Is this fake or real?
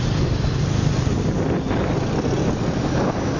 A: real